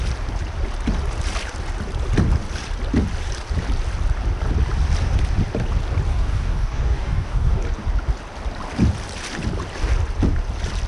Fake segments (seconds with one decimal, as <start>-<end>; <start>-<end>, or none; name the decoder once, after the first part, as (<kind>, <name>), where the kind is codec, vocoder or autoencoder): 6.1-7.6 (codec, DAC)